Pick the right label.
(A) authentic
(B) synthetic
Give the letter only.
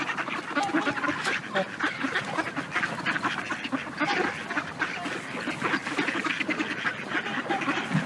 A